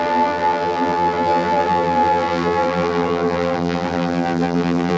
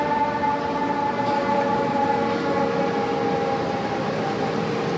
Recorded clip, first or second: second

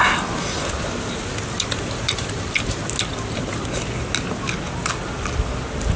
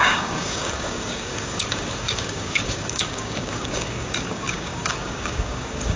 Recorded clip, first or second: first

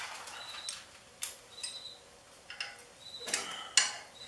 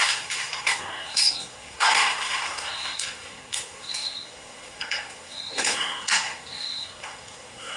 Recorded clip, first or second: first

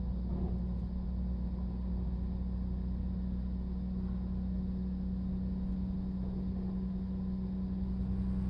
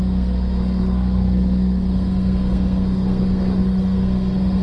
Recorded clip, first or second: first